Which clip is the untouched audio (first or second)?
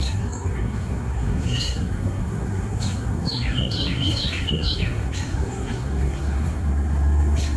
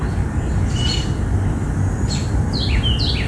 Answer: second